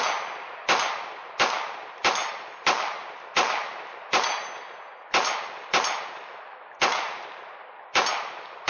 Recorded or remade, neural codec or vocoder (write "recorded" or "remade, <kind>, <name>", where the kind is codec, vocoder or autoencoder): recorded